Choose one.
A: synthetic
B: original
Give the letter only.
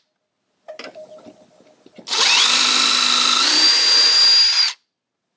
B